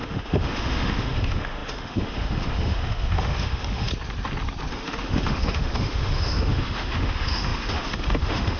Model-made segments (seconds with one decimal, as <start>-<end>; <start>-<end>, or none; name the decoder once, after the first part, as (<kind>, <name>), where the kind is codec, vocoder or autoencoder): 0.0-3.9 (autoencoder, DAC-VAE); 4.7-8.6